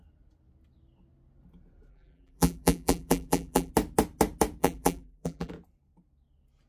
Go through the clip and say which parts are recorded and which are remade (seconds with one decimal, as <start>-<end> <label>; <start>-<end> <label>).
0.0-1.9 recorded; 1.9-3.7 remade; 3.7-4.6 recorded; 4.6-5.5 remade; 5.5-6.7 recorded